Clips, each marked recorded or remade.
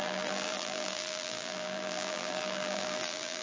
remade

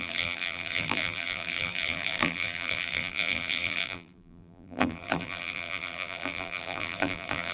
remade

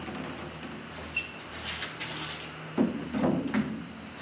recorded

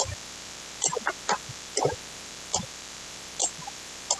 remade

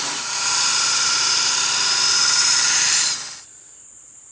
remade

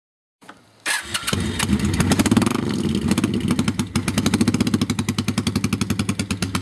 recorded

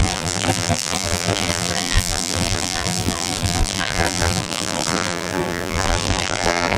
remade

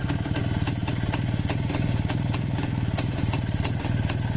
recorded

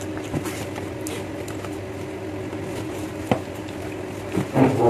remade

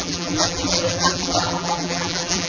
remade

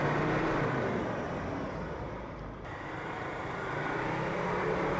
remade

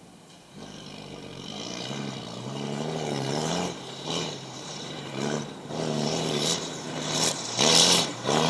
remade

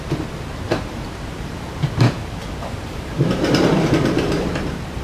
remade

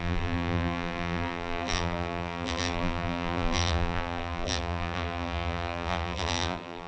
remade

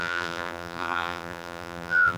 remade